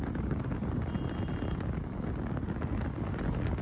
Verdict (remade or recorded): recorded